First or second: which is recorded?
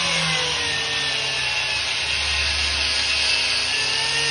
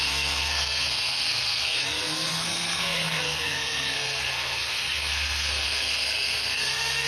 first